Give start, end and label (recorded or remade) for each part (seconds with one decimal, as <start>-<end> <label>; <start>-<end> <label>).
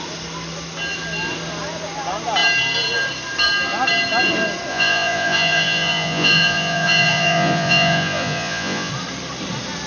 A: 0.0-4.7 recorded; 4.7-8.9 remade; 8.9-9.9 recorded